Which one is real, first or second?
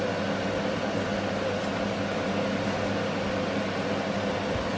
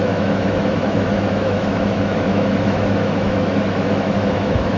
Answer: first